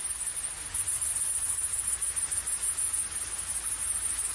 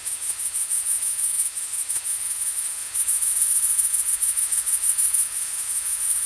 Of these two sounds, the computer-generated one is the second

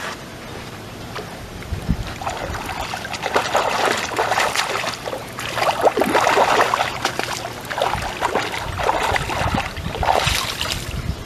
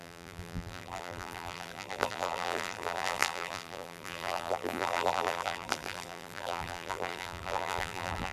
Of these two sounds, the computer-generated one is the second